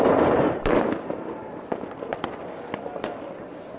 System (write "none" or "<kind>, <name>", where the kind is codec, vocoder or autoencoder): vocoder, BigVGAN v2